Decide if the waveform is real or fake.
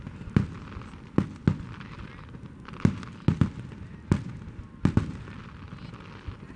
real